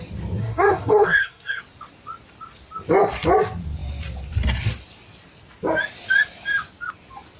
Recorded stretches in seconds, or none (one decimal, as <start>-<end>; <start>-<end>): 0.0-0.4; 1.6-7.4